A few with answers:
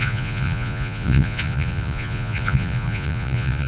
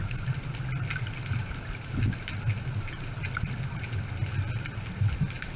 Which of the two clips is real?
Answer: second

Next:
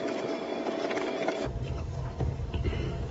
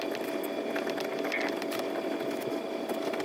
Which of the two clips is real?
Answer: second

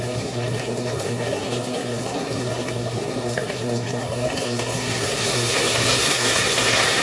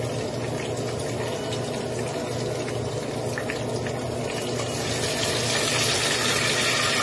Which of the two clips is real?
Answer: second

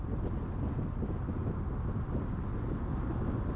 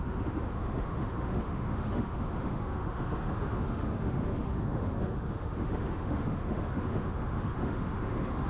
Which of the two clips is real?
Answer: first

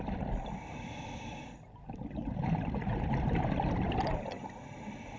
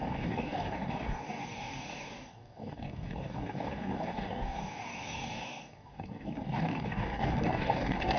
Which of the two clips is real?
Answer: first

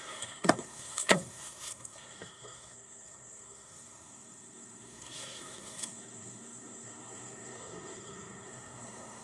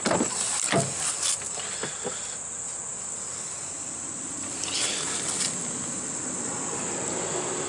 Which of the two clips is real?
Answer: second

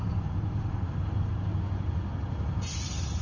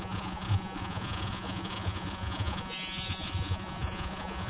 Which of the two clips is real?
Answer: first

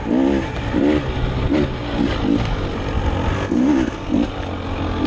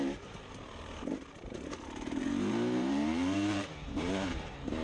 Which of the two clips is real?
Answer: first